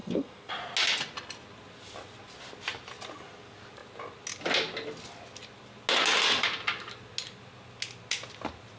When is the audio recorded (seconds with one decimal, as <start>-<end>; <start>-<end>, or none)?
0.5-8.8